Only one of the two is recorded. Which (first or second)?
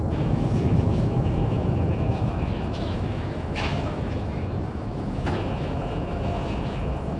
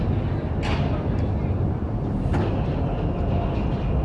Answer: second